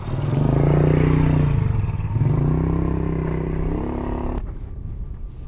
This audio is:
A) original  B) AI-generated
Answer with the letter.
A